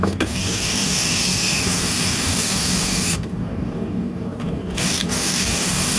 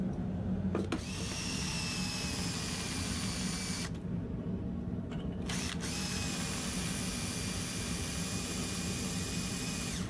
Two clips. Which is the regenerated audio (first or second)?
first